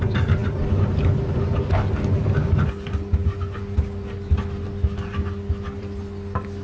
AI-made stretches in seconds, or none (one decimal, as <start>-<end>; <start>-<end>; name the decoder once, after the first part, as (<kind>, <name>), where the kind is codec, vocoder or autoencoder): none